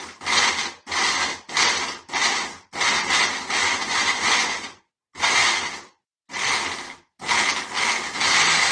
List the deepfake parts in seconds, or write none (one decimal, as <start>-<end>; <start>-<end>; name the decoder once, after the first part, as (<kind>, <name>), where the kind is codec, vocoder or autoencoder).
3.6-4.8 (vocoder, Vocos)